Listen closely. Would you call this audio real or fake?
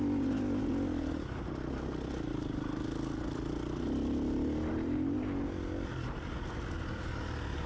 real